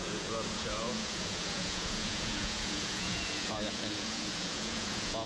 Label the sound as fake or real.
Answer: fake